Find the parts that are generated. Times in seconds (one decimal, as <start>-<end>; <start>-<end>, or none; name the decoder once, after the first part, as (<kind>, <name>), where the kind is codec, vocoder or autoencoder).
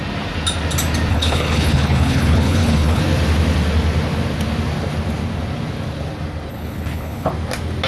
1.1-3.0 (codec, HILCodec); 6.5-7.3